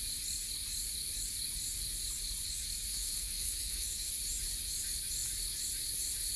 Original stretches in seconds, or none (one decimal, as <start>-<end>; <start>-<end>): 0.0-2.9; 4.1-6.4